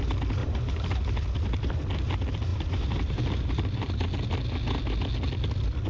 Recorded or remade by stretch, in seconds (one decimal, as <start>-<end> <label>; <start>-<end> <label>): 0.0-0.4 recorded; 0.4-1.0 remade; 1.0-2.5 recorded; 2.5-4.1 remade; 4.1-5.9 recorded